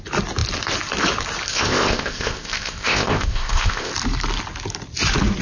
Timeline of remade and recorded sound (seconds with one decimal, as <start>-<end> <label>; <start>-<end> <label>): 0.0-1.5 recorded; 1.5-3.9 remade; 3.9-5.4 recorded

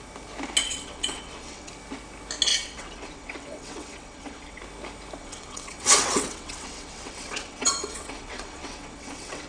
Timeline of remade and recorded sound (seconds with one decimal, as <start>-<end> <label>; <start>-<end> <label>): 0.0-0.6 recorded; 0.6-1.7 remade; 1.7-2.5 recorded; 2.5-4.6 remade; 4.6-5.2 recorded; 5.2-9.5 remade

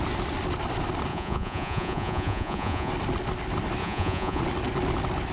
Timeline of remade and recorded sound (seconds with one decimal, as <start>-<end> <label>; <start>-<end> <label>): 0.0-1.1 recorded; 1.1-2.9 remade; 2.9-3.8 recorded; 3.8-4.4 remade; 4.4-5.3 recorded

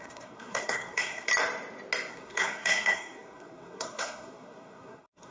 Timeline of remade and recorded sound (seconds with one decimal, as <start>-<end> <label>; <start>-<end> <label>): 0.0-1.3 remade; 1.3-2.1 recorded; 2.1-5.3 remade

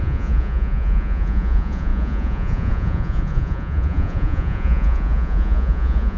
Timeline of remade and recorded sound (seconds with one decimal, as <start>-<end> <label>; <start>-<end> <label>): 0.0-6.2 remade